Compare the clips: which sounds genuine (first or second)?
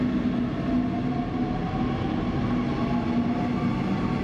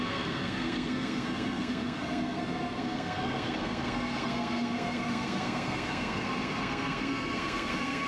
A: first